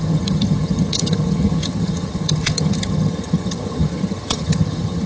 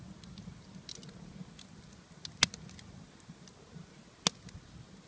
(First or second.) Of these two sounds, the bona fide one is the second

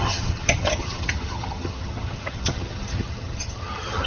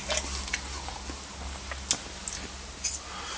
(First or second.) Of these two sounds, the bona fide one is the second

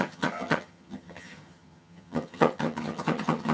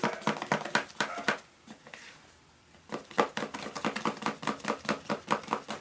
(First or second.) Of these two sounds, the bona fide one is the second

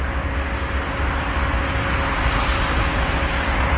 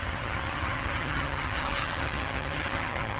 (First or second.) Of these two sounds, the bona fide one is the first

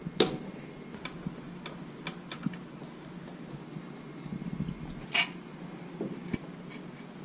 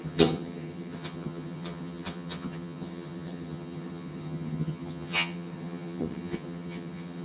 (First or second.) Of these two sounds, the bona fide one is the first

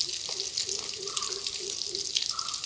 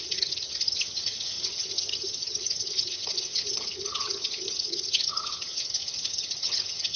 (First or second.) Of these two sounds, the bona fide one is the first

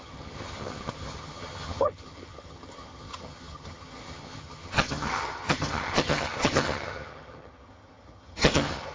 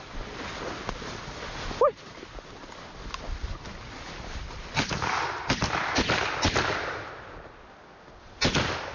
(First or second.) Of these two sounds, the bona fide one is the second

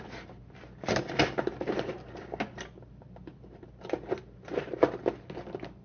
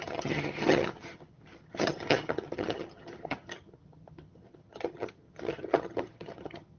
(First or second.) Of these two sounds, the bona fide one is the first